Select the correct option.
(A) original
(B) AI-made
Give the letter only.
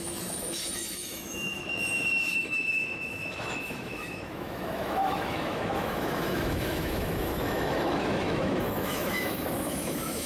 B